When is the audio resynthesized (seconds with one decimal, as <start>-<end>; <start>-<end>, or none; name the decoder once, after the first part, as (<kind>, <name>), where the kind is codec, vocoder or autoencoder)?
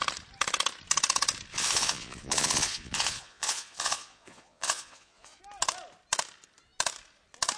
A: 1.5-5.4 (vocoder, Vocos)